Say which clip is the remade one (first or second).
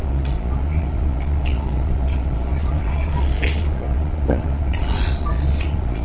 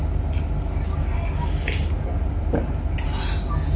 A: first